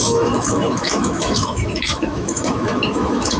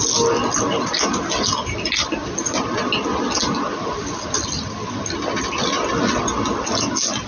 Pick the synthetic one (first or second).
first